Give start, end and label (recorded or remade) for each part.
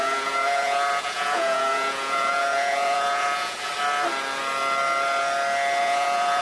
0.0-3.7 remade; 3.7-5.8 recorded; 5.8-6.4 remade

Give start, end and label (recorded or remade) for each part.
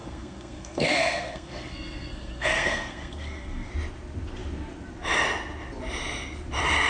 0.0-3.7 remade; 3.7-6.9 recorded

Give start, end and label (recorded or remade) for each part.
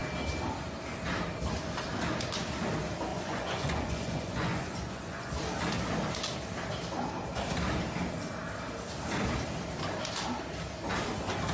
0.0-3.1 recorded; 3.1-5.3 remade; 5.3-11.5 recorded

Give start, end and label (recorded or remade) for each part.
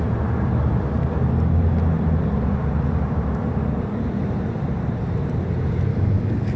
0.0-5.9 recorded; 5.9-6.6 remade